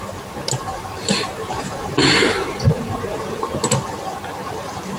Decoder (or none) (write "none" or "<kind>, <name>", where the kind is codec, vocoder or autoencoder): vocoder, BigVGAN v2